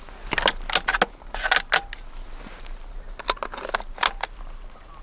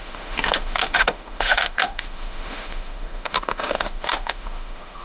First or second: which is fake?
second